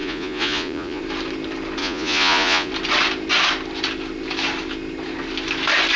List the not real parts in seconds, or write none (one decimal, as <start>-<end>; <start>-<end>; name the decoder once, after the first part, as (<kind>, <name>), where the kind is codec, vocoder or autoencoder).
0.0-1.0 (vocoder, Vocos); 1.8-2.7